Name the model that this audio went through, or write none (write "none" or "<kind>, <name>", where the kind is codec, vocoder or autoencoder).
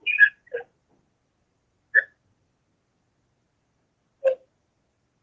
none